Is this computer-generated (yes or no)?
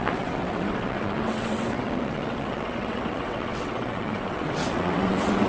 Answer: yes